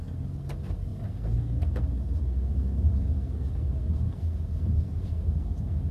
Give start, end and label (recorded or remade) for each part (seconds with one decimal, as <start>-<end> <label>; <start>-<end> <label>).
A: 0.0-5.9 remade